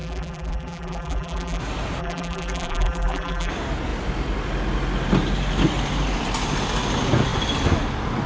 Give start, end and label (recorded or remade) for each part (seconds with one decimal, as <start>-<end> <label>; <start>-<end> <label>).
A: 0.0-1.6 remade; 1.6-2.0 recorded; 2.0-3.5 remade; 3.5-8.3 recorded